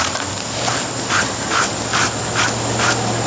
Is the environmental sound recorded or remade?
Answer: recorded